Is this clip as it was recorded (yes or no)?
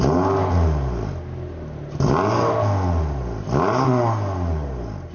yes